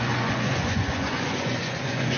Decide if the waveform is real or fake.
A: fake